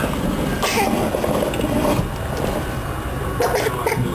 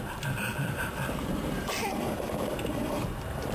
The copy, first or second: second